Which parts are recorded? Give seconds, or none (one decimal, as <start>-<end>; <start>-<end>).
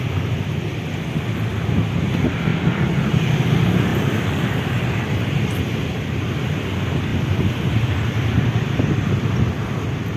0.0-3.9; 4.6-7.1; 9.3-10.2